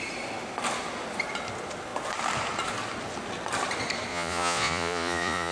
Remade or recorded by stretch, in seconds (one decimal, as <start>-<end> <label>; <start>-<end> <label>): 0.0-4.1 recorded; 4.1-5.5 remade